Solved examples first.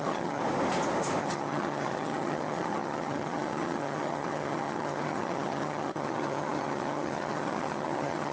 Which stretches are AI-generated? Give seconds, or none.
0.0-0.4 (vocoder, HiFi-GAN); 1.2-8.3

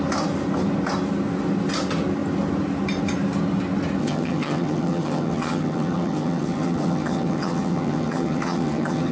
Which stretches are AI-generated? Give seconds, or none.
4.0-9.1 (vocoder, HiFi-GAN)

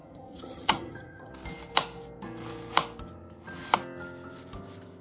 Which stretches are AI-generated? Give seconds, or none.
0.0-1.3 (vocoder, HiFi-GAN)

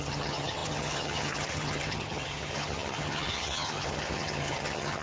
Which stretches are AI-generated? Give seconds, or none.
0.0-5.0 (vocoder, HiFi-GAN)